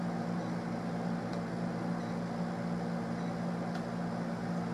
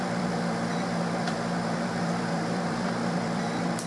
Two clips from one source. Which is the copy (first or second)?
second